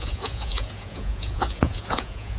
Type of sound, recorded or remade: remade